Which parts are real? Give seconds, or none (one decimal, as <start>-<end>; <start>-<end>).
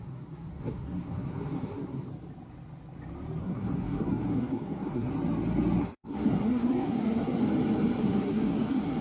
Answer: 2.1-3.4; 5.1-5.8; 7.4-8.0